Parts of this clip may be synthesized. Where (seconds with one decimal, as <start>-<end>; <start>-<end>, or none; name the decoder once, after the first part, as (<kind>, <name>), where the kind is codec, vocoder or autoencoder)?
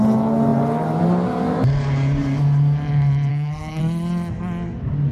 3.3-3.8 (codec, SNAC)